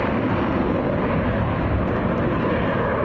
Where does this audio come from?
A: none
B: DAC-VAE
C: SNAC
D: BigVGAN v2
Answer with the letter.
A